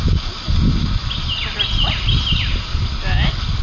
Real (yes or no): yes